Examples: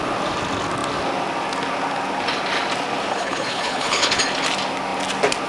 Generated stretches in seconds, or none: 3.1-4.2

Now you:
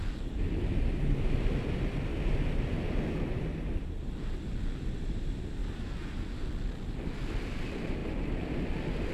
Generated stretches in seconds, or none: 8.0-8.6

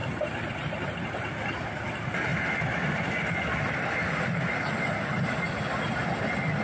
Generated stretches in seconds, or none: 0.0-1.2

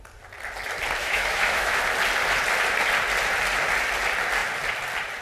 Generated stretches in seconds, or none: 1.0-1.8

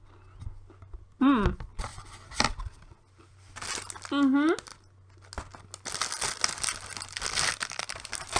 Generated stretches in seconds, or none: 1.9-3.5

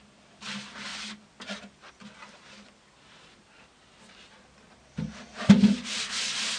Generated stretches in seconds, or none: 0.9-1.9